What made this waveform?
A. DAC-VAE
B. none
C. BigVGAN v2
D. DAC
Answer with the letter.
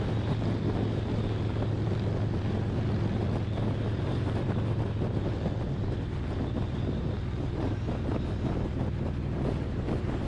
B